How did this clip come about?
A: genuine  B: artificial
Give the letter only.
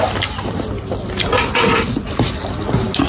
A